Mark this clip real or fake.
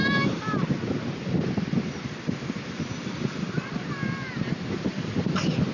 fake